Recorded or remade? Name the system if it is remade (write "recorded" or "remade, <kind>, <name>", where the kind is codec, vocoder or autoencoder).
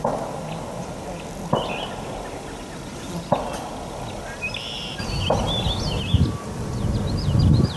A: recorded